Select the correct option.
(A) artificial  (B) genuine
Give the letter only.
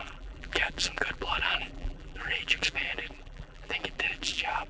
A